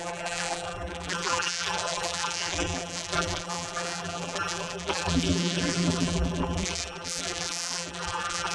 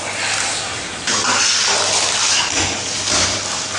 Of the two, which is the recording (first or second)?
second